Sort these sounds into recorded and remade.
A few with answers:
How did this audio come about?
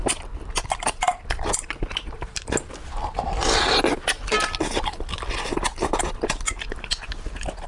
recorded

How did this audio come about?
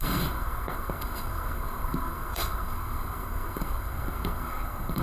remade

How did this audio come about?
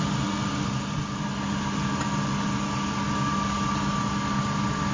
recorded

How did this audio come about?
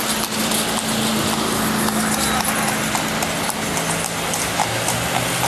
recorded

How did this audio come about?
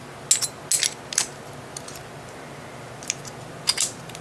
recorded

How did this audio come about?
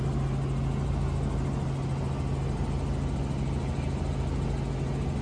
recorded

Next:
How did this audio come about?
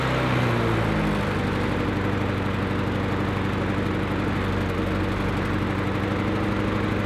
recorded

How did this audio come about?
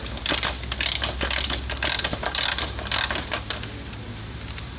recorded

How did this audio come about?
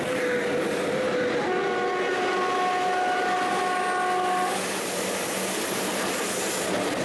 recorded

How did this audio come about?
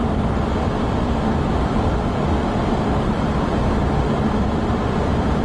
recorded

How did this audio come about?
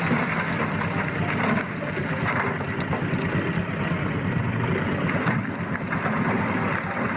recorded